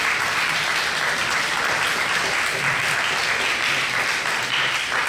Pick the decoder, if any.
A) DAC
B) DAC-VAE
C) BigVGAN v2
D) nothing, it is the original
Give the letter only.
D